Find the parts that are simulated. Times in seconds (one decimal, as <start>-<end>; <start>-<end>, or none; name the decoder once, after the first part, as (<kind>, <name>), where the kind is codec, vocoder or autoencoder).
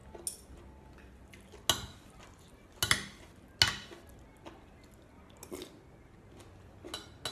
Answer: none